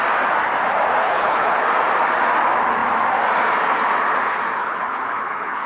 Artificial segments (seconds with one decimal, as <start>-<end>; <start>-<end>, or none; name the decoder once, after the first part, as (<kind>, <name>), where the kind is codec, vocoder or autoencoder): 1.0-1.6 (codec, HILCodec); 4.6-5.7